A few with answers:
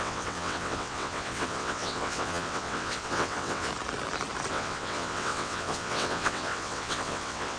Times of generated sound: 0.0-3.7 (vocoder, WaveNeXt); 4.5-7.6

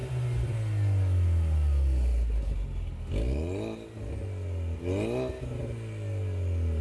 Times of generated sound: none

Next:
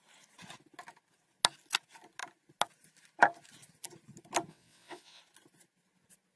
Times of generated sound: 4.5-5.2 (vocoder, WaveNeXt)

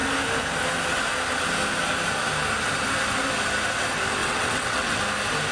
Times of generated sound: 4.2-5.0 (vocoder, WaveNeXt)

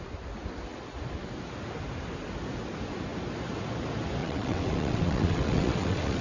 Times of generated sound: 4.2-6.2 (vocoder, WaveNeXt)

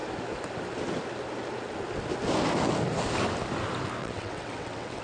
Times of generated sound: 4.0-5.0 (vocoder, WaveNeXt)

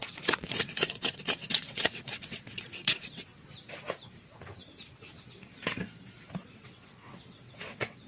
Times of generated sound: 0.0-3.3 (vocoder, WaveNeXt); 6.4-8.1